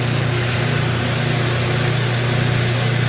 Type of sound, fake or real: real